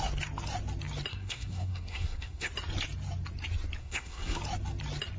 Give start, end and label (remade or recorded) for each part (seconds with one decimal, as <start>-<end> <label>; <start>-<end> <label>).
0.0-1.1 recorded; 1.1-2.5 remade; 2.5-3.8 recorded; 3.8-4.4 remade; 4.4-5.2 recorded